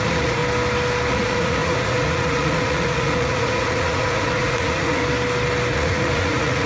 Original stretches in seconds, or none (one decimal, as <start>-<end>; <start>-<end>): 0.4-1.1; 5.0-5.7